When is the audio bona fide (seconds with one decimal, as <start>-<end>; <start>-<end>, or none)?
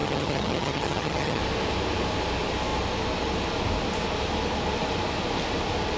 1.4-6.0